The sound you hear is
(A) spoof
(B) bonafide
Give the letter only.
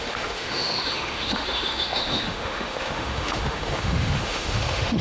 A